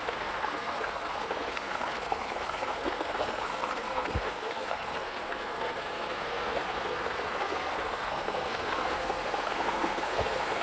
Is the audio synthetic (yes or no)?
yes